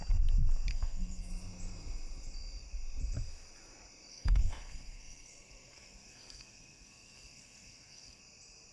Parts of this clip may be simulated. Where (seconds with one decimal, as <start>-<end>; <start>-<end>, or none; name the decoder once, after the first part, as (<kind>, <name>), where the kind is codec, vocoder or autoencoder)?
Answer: 0.7-1.3 (codec, SNAC); 4.1-8.2